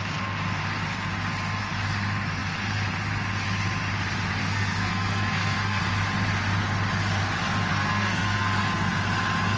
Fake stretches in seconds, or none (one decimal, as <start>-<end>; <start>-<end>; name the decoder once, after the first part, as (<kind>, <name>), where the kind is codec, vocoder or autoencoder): 4.4-5.8 (codec, SNAC); 7.7-8.9